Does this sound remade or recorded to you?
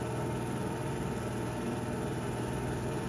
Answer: recorded